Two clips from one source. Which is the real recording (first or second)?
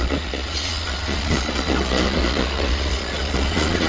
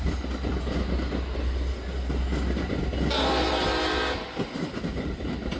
second